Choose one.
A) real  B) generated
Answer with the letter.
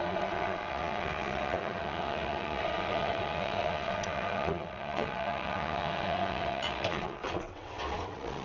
B